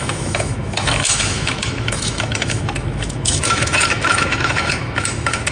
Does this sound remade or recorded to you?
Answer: remade